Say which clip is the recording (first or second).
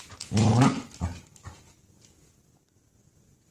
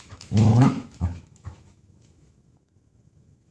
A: first